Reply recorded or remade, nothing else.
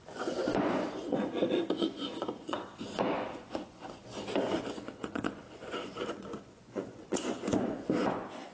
remade